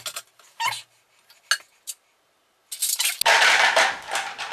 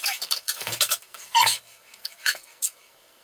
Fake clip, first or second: second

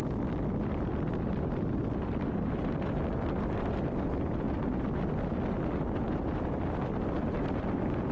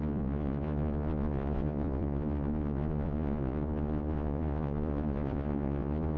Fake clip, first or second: second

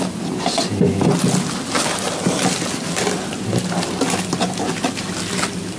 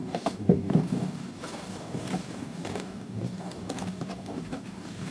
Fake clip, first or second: second